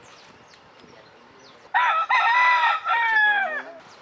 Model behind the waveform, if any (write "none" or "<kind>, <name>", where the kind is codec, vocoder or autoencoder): none